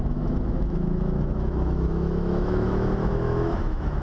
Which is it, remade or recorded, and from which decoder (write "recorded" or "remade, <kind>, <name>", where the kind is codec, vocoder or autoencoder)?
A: remade, autoencoder, DAC-VAE